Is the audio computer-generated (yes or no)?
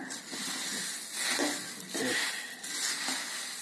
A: no